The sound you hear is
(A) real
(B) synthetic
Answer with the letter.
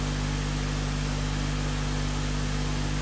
A